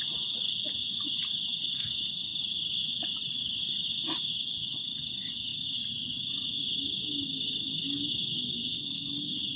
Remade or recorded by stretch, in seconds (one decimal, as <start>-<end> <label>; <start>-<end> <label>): 0.0-9.6 recorded